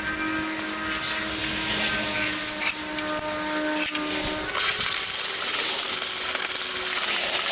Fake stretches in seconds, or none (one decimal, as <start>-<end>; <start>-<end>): none